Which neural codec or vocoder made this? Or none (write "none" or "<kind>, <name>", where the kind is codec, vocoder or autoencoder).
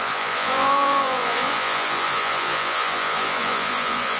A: vocoder, Vocos